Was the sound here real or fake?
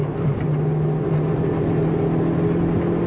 real